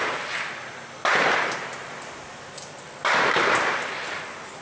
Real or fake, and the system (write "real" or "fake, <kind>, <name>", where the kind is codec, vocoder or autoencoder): real